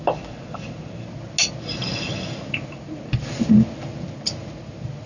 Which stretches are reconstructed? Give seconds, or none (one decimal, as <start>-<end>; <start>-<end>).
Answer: none